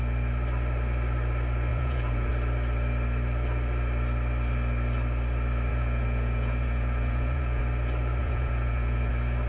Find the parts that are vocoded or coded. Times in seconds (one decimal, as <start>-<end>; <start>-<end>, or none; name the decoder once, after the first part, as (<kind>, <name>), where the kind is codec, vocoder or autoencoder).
1.7-2.3 (vocoder, Vocos); 5.7-7.6; 8.2-9.1